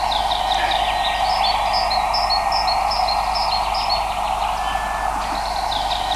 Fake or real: real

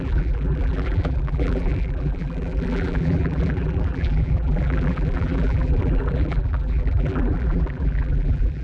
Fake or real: fake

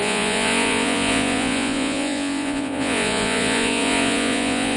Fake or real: fake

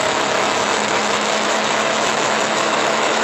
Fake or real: fake